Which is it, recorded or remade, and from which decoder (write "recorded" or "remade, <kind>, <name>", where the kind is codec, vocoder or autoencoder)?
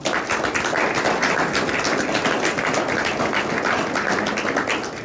recorded